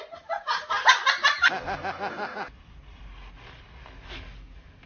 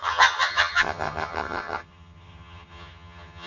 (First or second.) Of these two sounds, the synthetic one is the second